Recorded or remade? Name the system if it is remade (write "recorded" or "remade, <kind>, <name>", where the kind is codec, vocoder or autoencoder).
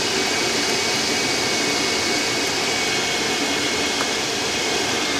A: recorded